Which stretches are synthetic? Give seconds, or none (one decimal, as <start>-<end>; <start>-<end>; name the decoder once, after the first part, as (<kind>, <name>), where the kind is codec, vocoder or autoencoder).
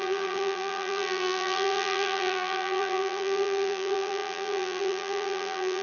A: 0.0-5.8 (vocoder, BigVGAN v2)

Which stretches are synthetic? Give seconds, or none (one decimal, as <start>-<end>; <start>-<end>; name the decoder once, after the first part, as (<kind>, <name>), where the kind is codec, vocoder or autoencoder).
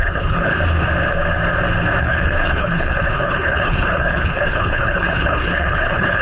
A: 0.0-0.5 (codec, HILCodec); 2.0-6.2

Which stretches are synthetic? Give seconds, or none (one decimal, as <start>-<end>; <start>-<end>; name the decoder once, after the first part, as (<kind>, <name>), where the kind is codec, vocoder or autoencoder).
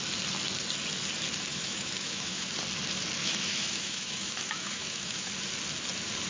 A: 1.5-2.5 (autoencoder, DAC-VAE); 3.2-5.3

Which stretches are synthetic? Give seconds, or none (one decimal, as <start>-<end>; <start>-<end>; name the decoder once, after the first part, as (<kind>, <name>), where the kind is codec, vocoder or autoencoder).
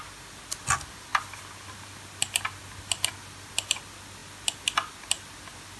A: none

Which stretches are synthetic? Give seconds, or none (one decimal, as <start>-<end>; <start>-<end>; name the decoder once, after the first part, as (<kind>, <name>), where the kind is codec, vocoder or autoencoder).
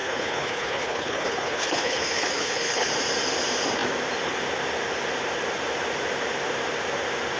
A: 0.0-2.9 (codec, HILCodec)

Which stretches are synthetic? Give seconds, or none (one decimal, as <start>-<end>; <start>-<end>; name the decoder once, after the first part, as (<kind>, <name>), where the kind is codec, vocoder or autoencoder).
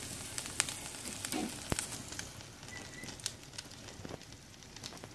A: none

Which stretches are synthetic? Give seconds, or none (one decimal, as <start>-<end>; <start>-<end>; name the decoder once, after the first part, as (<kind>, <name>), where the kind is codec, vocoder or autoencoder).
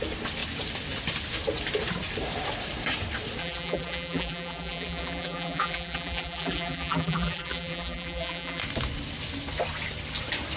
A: 3.4-8.6 (vocoder, BigVGAN v2)